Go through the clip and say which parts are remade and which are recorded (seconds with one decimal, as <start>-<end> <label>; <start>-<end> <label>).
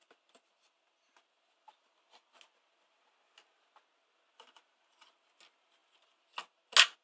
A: 0.0-7.0 recorded